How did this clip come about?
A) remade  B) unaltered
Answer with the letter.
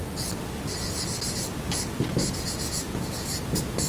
B